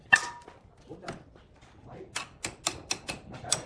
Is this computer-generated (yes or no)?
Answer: no